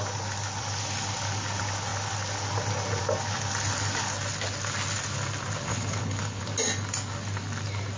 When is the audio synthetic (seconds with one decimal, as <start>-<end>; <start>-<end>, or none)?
5.7-6.4